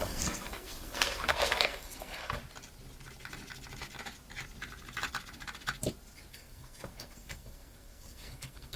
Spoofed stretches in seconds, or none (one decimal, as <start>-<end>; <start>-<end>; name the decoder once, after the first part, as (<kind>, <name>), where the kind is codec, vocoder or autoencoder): 0.0-2.4 (codec, SNAC); 6.3-8.8